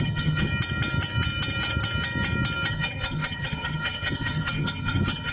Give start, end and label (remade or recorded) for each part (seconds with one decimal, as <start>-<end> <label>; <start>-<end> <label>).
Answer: 0.0-0.5 remade; 0.5-2.7 recorded; 2.7-5.3 remade